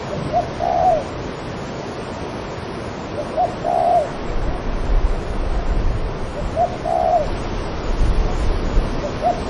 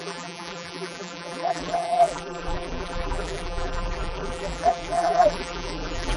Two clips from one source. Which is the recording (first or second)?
first